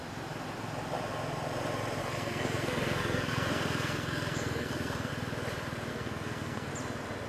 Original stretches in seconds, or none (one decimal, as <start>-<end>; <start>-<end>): 0.0-2.0; 5.1-5.9; 6.7-7.3